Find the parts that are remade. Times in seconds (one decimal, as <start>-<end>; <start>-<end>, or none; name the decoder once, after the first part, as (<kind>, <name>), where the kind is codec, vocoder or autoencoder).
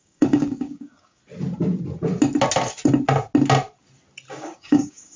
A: 0.0-1.2 (codec, DAC); 4.3-5.2